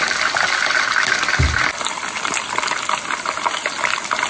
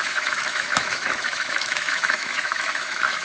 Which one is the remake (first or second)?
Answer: second